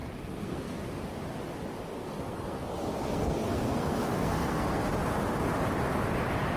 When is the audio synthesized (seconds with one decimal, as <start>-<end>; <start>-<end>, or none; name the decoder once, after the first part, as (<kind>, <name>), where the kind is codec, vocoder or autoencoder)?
0.0-0.8 (codec, SNAC); 1.9-4.9